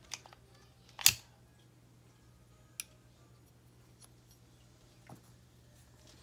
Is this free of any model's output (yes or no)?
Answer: yes